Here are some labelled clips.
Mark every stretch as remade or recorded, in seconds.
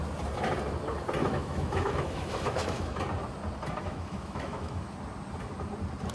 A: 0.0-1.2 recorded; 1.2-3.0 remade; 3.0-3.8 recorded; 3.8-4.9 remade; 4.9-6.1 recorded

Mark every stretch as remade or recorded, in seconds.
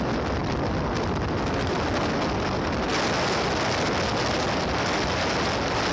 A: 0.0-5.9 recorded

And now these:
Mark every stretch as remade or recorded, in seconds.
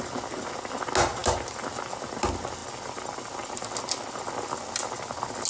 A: 0.0-5.5 recorded